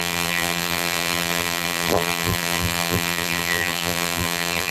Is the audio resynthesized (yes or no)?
yes